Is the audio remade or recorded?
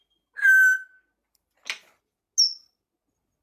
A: recorded